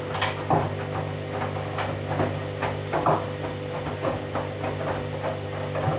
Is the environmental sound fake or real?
real